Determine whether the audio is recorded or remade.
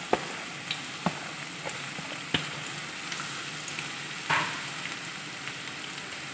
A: recorded